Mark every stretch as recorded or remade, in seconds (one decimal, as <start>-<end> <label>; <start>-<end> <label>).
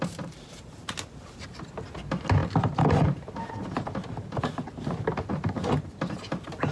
0.0-6.7 recorded